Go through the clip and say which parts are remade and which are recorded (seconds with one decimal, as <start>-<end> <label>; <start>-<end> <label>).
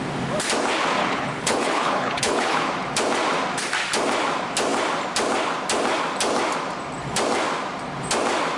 0.0-1.0 recorded; 1.0-2.7 remade; 2.7-8.6 recorded